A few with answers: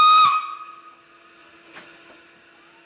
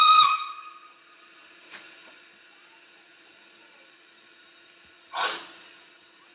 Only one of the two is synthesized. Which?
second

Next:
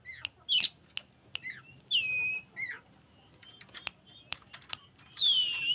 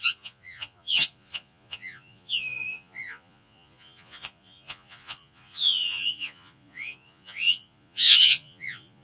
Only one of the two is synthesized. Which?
second